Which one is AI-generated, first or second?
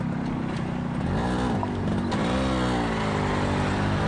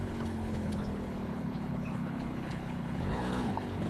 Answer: second